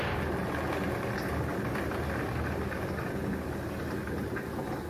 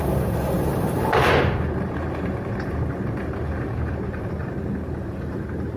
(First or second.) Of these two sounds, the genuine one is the first